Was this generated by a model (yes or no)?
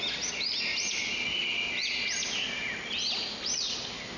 no